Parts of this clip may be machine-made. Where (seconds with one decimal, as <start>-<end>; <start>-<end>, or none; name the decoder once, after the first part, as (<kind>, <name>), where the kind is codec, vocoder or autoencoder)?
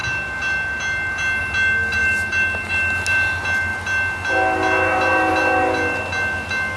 none